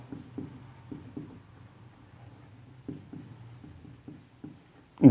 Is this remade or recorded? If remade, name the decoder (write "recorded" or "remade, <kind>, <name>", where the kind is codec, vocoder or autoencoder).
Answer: recorded